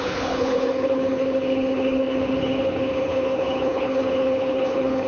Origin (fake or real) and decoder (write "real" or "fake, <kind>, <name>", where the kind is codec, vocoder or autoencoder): fake, codec, HILCodec